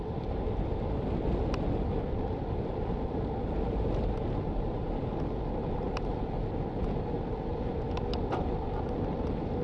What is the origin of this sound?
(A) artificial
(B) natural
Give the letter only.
B